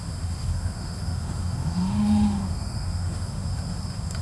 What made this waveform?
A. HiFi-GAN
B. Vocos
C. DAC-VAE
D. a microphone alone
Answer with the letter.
C